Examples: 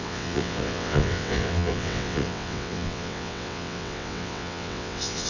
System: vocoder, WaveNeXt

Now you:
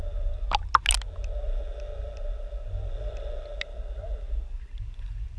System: none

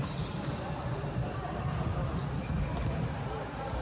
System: none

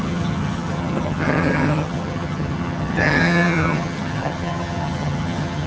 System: vocoder, HiFi-GAN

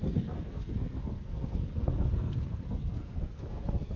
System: codec, SNAC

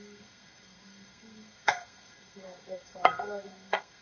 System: codec, SNAC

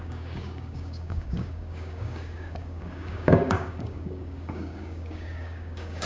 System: codec, DAC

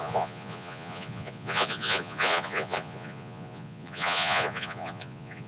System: vocoder, Vocos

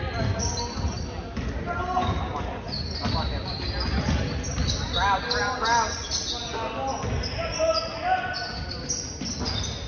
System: none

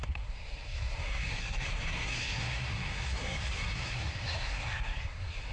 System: codec, SNAC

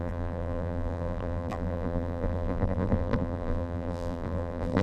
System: vocoder, BigVGAN v2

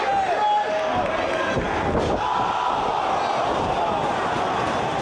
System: none